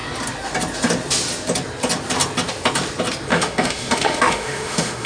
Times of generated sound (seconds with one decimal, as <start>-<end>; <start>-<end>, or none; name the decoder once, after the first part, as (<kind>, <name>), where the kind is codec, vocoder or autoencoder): 3.3-5.1 (autoencoder, DAC-VAE)